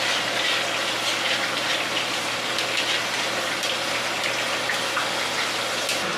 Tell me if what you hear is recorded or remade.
recorded